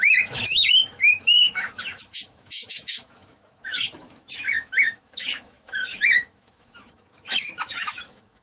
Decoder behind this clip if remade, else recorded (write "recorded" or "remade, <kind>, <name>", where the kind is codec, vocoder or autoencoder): remade, autoencoder, DAC-VAE